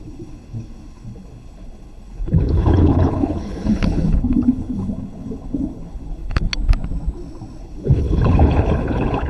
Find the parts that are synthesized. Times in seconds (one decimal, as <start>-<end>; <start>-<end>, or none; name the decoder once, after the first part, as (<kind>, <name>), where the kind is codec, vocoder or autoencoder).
0.0-6.5 (codec, HILCodec); 7.6-9.3